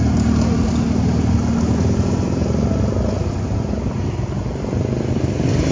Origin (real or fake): real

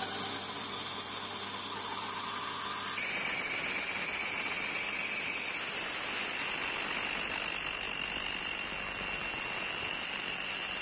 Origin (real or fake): real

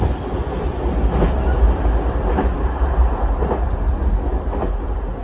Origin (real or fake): real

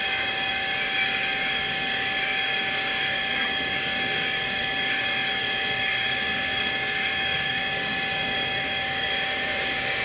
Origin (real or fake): fake